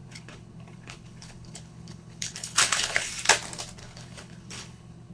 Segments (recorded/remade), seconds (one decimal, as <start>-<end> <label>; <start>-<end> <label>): 0.0-3.1 remade; 3.1-3.8 recorded; 3.8-5.1 remade

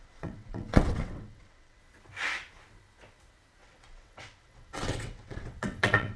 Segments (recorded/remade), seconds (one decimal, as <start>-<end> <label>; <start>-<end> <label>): 0.0-1.8 remade; 1.8-3.6 recorded; 3.6-6.2 remade

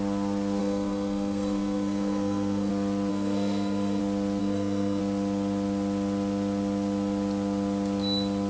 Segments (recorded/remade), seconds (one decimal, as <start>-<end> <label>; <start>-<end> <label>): 0.0-0.6 recorded; 0.6-2.7 remade; 2.7-3.1 recorded; 3.1-4.0 remade; 4.0-4.4 recorded; 4.4-5.0 remade; 5.0-8.5 recorded

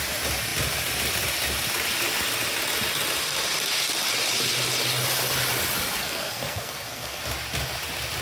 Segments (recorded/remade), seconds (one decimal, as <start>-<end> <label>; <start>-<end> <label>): 0.0-6.0 recorded; 6.0-7.2 remade; 7.2-8.2 recorded